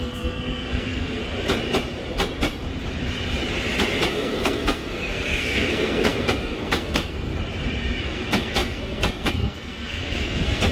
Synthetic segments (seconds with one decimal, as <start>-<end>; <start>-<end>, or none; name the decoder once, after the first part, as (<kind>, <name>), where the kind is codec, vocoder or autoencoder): 0.0-1.2 (codec, SNAC); 4.1-7.3; 8.0-10.7